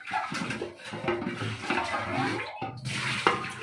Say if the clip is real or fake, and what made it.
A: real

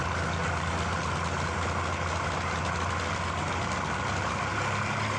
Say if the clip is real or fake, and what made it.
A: real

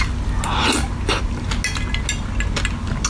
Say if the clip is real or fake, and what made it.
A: real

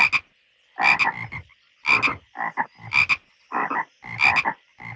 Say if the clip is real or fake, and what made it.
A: real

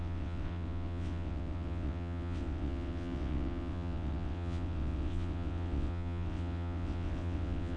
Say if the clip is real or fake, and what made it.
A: fake, vocoder, WaveNeXt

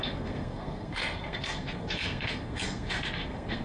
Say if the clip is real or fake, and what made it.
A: fake, codec, SNAC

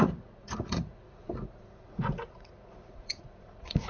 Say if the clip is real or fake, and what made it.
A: fake, vocoder, Vocos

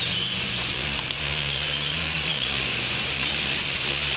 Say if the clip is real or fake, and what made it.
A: fake, vocoder, Vocos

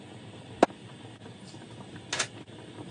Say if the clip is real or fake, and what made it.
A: real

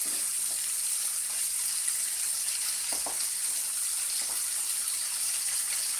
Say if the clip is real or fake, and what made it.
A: real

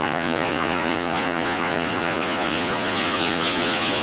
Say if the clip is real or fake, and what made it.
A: fake, vocoder, Vocos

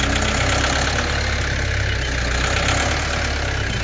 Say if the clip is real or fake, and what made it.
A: real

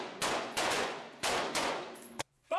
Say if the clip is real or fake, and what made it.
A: fake, vocoder, Vocos